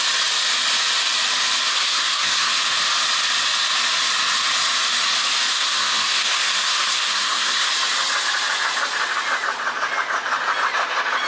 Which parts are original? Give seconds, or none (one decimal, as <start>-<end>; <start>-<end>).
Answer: 0.0-1.7; 2.5-5.5; 7.7-11.3